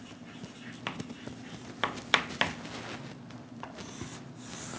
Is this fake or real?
real